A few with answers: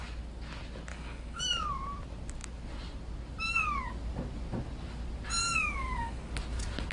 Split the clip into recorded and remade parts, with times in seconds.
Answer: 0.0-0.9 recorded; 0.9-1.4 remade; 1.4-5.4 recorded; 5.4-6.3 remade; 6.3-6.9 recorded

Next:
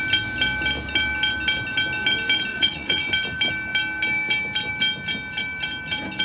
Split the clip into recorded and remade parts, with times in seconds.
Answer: 0.0-2.5 recorded; 2.5-3.1 remade; 3.1-6.2 recorded

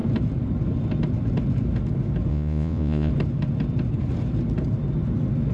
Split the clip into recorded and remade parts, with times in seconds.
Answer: 0.0-2.3 recorded; 2.3-3.1 remade; 3.1-5.5 recorded

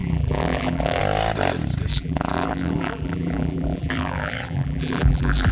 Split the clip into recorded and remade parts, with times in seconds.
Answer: 0.0-1.0 remade; 1.0-1.9 recorded; 1.9-5.5 remade

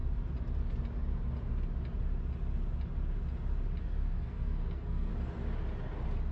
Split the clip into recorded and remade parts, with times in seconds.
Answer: 0.0-3.8 recorded; 3.8-5.1 remade; 5.1-6.3 recorded